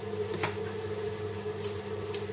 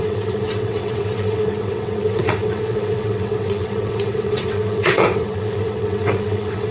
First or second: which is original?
first